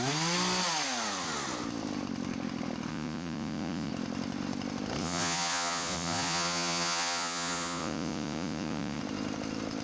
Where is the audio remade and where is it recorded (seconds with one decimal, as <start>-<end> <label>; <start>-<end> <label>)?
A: 0.0-2.9 recorded; 2.9-3.9 remade; 3.9-5.0 recorded; 5.0-9.0 remade; 9.0-9.8 recorded